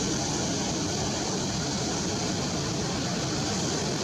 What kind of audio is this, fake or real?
real